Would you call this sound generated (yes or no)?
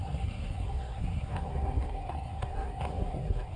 yes